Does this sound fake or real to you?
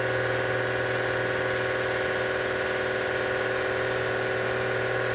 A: real